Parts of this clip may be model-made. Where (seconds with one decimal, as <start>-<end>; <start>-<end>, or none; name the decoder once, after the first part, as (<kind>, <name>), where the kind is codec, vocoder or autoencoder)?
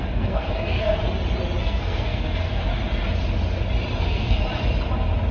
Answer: 0.0-1.0 (codec, SNAC); 1.6-2.7; 4.0-4.4